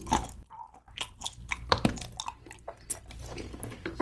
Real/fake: real